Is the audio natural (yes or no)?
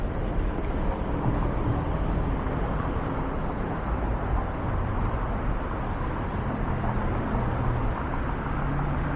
yes